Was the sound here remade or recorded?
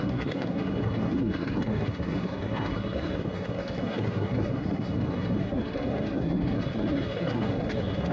remade